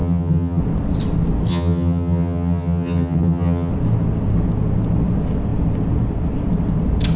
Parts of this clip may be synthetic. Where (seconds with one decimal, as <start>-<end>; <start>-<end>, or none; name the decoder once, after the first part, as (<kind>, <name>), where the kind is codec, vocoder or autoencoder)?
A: 0.0-0.6 (vocoder, HiFi-GAN); 1.5-3.7